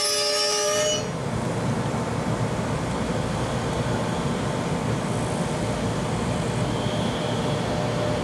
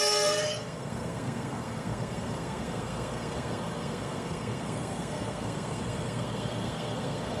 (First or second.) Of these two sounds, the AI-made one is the second